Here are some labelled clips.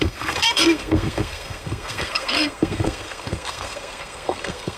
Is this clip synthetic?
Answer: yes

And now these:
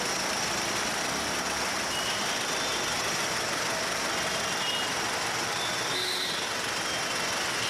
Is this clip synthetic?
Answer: no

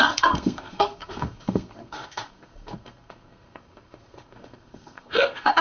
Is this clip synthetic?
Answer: yes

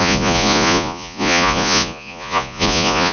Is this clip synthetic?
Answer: yes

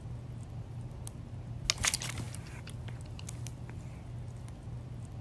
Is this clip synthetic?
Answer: no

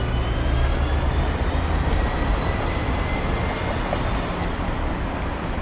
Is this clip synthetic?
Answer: yes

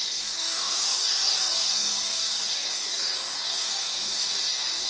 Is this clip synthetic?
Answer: yes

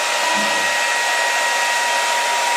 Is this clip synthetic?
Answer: no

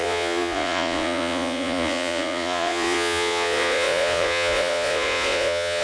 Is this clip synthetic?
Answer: yes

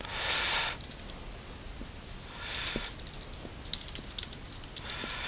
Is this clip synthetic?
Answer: no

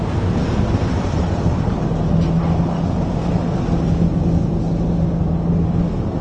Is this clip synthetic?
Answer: no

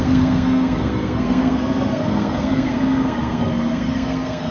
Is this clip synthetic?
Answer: yes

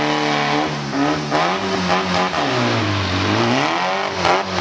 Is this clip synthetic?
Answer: no